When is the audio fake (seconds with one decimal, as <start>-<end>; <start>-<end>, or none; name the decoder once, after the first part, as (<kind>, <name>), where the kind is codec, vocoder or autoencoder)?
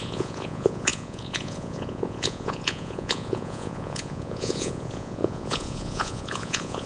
0.0-6.9 (vocoder, Vocos)